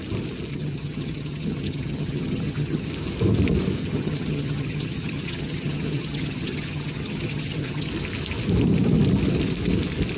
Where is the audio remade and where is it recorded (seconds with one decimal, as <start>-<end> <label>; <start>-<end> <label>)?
0.0-0.5 recorded; 0.5-2.9 remade; 2.9-3.8 recorded; 3.8-7.9 remade; 7.9-10.2 recorded